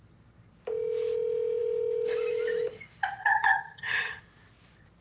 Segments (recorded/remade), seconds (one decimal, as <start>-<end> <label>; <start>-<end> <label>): 0.0-3.2 recorded; 3.2-4.2 remade; 4.2-5.0 recorded